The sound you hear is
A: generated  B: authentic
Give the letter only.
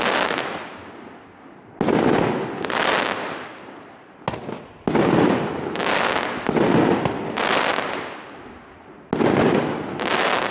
B